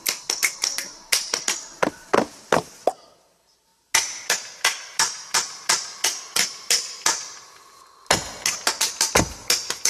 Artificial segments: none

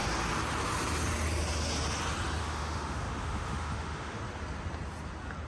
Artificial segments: 2.4-4.2 (autoencoder, DAC-VAE)

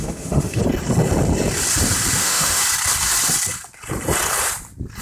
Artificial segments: 0.0-0.6 (autoencoder, DAC-VAE); 2.2-2.6

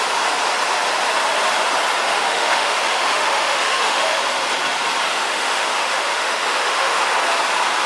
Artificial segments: 2.1-4.2 (autoencoder, DAC-VAE); 5.1-7.0

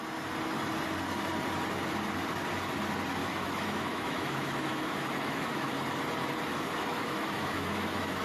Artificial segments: 3.2-5.7 (autoencoder, DAC-VAE); 6.5-8.2

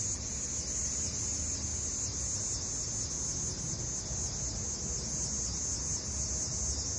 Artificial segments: none